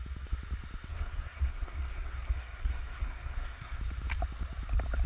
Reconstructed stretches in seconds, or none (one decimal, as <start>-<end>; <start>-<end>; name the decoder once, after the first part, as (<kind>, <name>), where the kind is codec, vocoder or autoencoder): 0.9-3.8 (codec, SNAC)